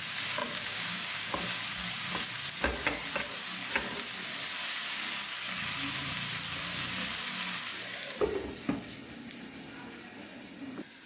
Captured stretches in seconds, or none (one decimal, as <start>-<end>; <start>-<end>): 0.0-0.4; 1.2-11.1